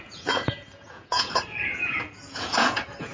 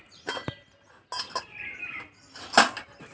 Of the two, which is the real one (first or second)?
second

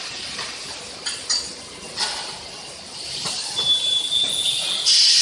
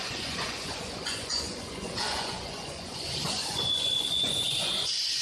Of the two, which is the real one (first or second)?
first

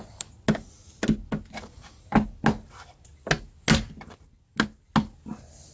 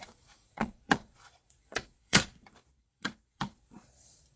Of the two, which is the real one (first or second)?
first